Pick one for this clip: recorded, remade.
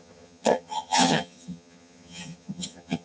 remade